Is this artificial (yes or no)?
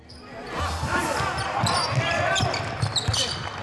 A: no